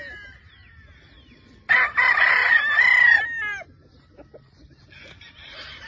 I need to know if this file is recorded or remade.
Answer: recorded